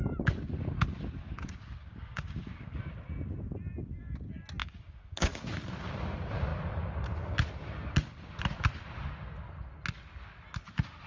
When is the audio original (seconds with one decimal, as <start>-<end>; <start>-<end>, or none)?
0.0-1.2; 2.8-4.6; 5.4-11.1